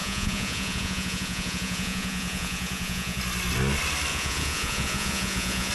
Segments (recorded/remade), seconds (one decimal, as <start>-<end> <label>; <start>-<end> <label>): 0.0-3.2 remade; 3.2-4.1 recorded; 4.1-5.7 remade